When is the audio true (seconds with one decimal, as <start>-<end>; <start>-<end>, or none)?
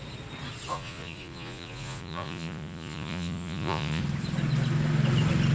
0.0-0.7; 4.0-5.5